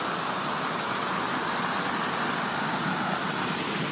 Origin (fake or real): real